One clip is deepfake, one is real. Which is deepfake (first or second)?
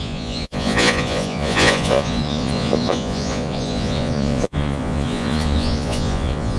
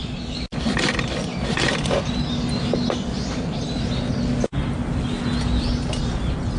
first